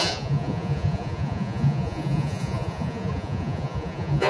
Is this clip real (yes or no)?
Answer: no